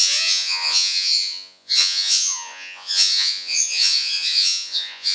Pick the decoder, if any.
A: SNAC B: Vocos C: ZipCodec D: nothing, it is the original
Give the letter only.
B